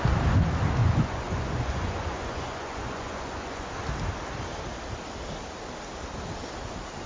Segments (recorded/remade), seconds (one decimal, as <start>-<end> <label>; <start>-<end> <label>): 0.0-0.8 recorded; 0.8-3.7 remade; 3.7-7.1 recorded